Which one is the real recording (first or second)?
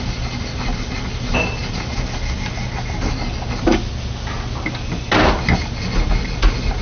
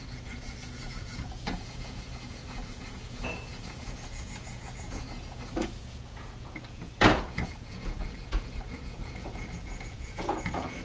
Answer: first